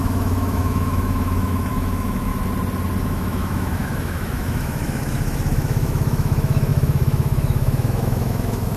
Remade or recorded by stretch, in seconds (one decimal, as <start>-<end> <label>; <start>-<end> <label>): 0.0-2.3 remade; 2.3-3.0 recorded; 3.0-8.8 remade